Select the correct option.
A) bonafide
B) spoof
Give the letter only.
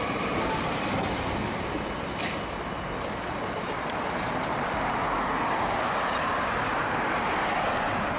A